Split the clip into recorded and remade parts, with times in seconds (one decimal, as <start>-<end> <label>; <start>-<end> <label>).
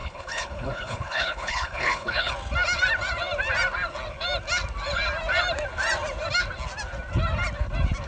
0.0-2.3 remade; 2.3-8.1 recorded